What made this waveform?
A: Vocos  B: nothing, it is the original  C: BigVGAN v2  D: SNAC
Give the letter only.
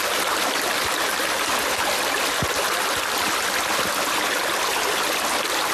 B